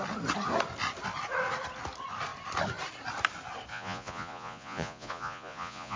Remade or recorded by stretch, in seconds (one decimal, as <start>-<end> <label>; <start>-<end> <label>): 0.0-3.7 recorded; 3.7-6.0 remade